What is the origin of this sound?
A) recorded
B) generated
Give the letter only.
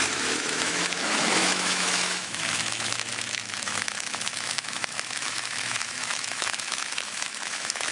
B